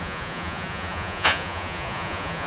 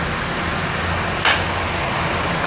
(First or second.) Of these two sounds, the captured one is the second